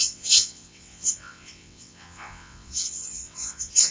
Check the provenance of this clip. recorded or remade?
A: remade